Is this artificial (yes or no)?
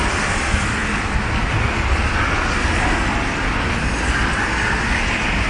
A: no